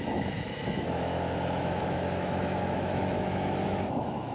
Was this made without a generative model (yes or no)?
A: no